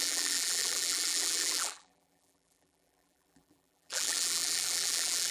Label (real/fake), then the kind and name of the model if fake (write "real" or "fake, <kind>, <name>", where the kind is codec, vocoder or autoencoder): fake, vocoder, BigVGAN v2